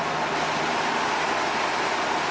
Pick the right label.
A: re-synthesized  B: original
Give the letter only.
B